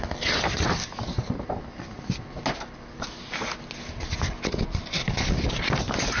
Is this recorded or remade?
recorded